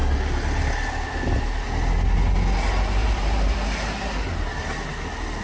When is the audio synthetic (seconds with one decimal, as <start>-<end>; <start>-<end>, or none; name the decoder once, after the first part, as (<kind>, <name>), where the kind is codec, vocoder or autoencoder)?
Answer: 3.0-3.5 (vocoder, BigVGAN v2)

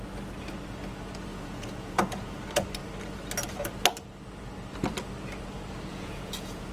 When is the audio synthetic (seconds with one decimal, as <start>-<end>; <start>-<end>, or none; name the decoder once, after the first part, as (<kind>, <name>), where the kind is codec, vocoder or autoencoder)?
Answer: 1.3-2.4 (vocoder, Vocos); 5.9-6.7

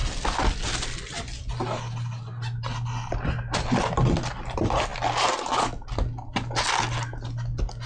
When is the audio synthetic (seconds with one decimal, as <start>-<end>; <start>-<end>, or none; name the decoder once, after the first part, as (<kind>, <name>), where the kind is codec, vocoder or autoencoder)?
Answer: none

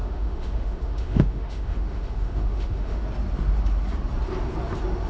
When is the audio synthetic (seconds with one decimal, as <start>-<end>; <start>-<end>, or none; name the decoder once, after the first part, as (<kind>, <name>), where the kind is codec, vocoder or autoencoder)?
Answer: 0.0-3.0 (autoencoder, DAC-VAE)

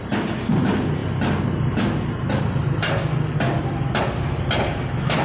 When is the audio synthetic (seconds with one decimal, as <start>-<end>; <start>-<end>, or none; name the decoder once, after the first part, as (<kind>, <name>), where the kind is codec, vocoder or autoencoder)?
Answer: none